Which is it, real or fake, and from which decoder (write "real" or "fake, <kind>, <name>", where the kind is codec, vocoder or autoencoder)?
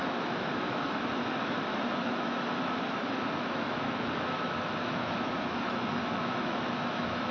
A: fake, autoencoder, DAC-VAE